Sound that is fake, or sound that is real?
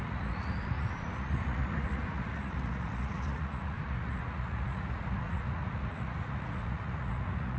fake